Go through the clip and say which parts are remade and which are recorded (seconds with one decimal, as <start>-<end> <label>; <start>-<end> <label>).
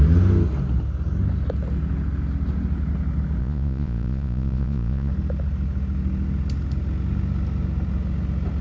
0.0-3.4 recorded; 3.4-5.1 remade; 5.1-8.6 recorded